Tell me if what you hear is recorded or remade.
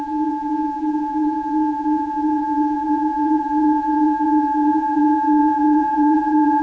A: remade